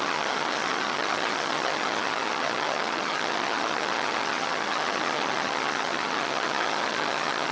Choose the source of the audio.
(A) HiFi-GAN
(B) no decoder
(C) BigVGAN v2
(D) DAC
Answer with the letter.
A